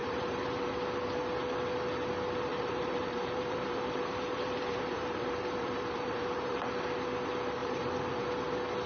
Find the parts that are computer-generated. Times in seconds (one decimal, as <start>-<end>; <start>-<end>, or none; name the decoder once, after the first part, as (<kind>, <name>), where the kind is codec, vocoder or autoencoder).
0.0-0.7 (vocoder, BigVGAN v2); 2.5-6.7; 7.6-8.3